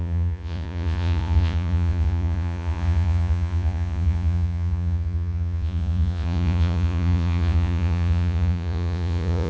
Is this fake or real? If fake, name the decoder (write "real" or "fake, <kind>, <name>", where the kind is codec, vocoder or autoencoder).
fake, vocoder, Vocos